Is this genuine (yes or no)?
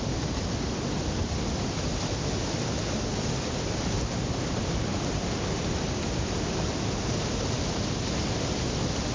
yes